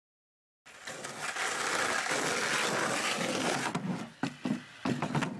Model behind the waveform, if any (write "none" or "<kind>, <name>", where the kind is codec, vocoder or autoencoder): none